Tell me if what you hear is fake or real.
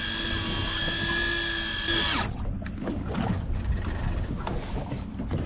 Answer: real